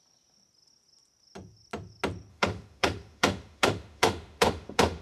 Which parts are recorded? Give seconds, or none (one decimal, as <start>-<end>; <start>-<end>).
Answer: 0.0-2.3